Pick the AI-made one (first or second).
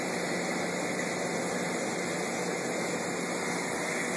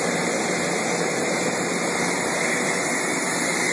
second